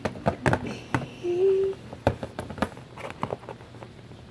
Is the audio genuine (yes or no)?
yes